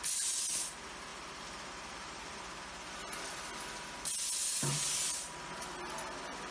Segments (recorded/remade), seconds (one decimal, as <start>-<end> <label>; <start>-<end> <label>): 0.0-6.5 recorded